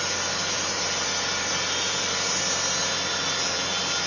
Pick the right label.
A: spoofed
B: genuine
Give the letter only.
B